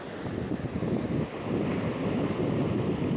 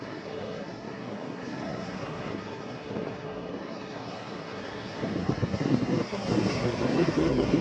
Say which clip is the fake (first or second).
second